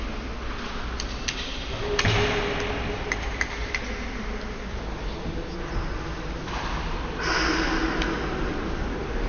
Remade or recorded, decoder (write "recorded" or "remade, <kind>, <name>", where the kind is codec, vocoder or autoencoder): recorded